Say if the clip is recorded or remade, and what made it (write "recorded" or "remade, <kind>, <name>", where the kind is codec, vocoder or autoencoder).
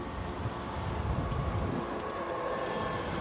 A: recorded